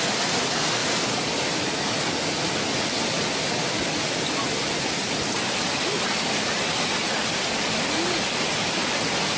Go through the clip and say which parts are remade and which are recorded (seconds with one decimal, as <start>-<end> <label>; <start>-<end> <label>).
0.0-9.4 recorded